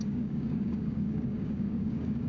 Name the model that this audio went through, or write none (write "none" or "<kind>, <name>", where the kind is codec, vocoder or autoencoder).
codec, DAC